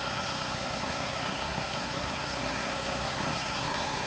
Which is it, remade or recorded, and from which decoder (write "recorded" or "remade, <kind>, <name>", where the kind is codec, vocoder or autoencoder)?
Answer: remade, codec, SNAC